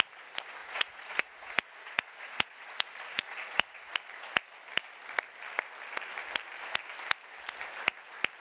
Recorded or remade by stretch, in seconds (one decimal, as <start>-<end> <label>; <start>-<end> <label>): 0.0-0.6 recorded; 0.6-3.9 remade; 3.9-8.4 recorded